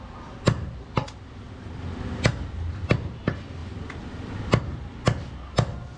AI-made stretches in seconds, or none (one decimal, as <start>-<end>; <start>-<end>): 1.0-1.8; 3.6-4.4